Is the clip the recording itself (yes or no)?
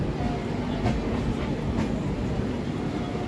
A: yes